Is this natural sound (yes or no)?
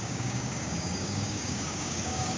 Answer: no